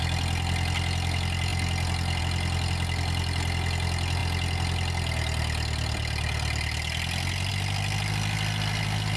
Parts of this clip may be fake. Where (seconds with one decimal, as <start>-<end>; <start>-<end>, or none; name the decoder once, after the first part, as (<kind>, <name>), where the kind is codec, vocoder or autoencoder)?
none